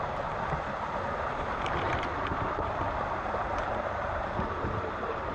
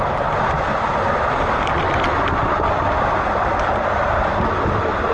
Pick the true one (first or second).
second